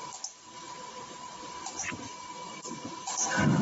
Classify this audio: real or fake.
fake